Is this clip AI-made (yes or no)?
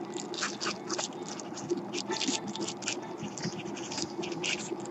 no